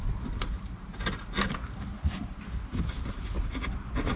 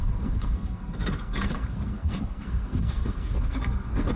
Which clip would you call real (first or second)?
first